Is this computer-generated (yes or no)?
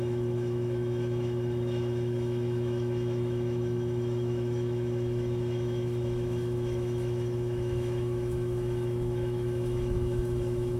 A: yes